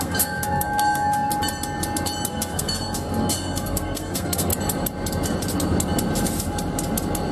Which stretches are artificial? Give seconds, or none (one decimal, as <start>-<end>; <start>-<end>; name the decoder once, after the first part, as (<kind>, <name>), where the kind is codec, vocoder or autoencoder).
0.0-1.3 (codec, SNAC); 2.3-4.5

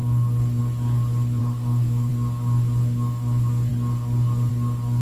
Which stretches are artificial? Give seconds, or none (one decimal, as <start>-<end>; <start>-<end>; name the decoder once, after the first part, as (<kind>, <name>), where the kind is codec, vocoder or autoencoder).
1.4-2.1 (codec, SNAC)

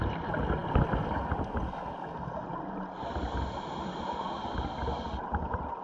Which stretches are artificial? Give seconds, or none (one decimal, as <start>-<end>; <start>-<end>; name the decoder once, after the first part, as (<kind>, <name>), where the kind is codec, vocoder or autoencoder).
none

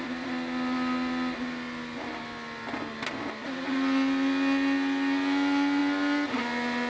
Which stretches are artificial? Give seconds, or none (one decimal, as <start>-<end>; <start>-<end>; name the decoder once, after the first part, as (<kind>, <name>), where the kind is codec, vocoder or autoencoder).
none

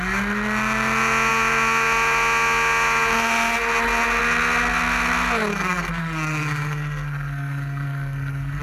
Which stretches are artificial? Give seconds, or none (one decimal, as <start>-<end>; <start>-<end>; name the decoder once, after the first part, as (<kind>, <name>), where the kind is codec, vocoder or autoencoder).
5.5-8.6 (codec, SNAC)